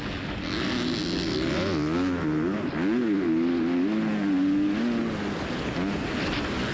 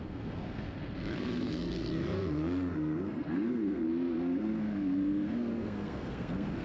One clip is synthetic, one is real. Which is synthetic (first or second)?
second